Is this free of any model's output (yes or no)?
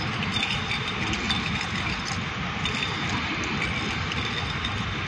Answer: yes